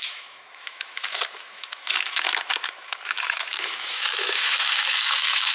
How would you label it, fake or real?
fake